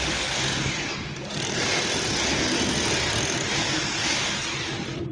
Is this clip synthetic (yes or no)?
no